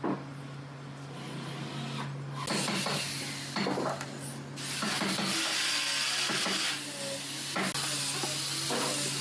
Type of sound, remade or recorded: recorded